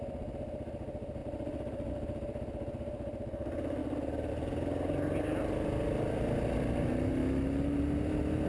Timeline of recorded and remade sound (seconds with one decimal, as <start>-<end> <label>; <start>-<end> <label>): 0.0-8.5 recorded